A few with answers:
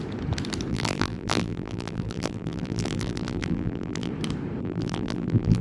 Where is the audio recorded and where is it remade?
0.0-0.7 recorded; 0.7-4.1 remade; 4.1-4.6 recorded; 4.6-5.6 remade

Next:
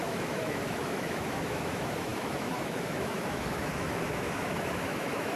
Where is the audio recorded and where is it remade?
0.0-5.4 remade

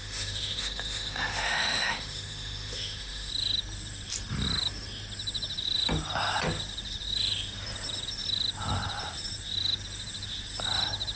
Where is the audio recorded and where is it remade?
0.0-3.3 remade; 3.3-11.2 recorded

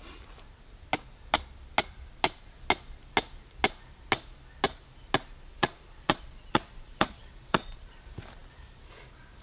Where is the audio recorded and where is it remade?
0.0-5.5 recorded; 5.5-7.8 remade; 7.8-9.4 recorded

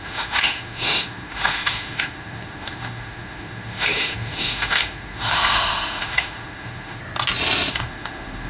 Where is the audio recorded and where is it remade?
0.0-7.0 remade; 7.0-7.7 recorded; 7.7-8.5 remade

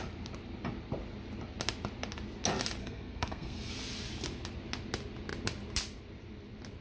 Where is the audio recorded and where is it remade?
0.0-2.8 recorded; 2.8-3.7 remade; 3.7-6.8 recorded

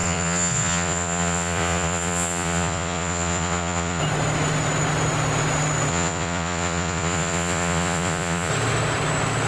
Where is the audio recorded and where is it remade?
0.0-4.0 remade; 4.0-5.9 recorded; 5.9-8.5 remade; 8.5-9.5 recorded